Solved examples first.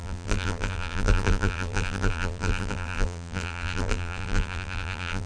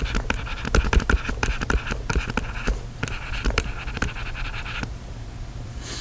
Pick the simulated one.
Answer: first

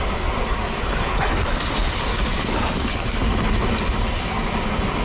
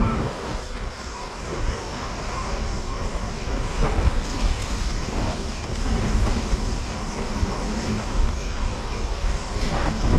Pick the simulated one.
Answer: second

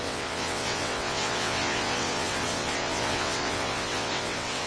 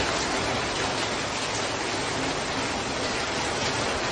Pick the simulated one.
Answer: first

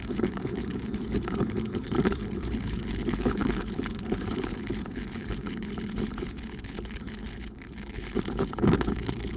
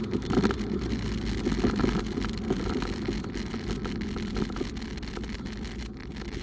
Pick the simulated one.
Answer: first